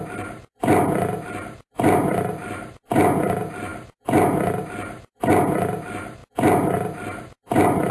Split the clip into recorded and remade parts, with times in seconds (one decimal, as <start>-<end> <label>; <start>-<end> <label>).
0.0-7.9 recorded